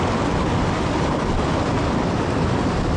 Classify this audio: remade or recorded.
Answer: recorded